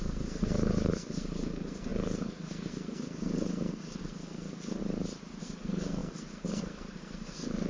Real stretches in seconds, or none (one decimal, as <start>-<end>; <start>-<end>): 4.8-5.4